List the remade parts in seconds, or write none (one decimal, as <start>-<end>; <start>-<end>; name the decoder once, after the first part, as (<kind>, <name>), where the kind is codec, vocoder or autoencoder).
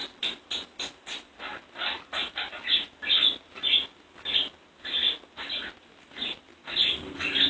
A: none